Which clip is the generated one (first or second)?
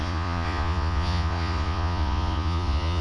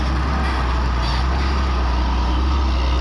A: first